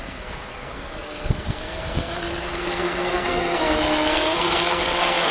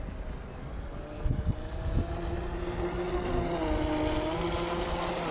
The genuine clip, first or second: second